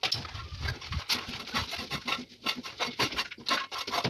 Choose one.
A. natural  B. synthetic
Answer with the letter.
A